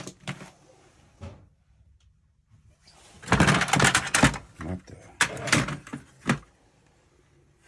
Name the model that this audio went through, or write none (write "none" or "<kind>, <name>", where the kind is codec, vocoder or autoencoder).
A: none